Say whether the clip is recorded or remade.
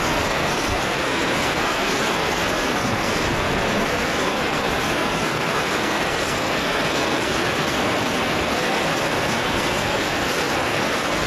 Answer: remade